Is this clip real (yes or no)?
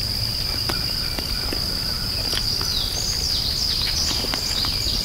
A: yes